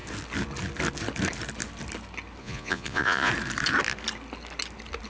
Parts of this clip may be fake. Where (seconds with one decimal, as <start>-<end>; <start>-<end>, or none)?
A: 2.4-3.3